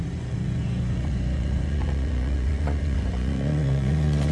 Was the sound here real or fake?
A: fake